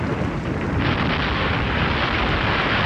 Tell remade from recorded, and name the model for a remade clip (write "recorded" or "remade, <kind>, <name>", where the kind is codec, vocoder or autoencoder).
recorded